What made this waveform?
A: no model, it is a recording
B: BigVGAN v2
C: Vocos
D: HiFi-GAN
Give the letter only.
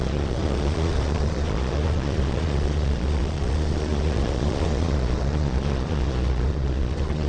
C